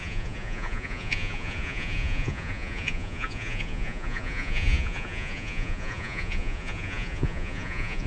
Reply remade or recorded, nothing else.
remade